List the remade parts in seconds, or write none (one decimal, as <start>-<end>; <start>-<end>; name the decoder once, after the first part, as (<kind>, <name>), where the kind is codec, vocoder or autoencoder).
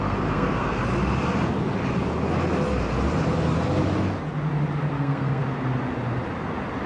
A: 0.0-0.8 (codec, SNAC); 4.9-5.4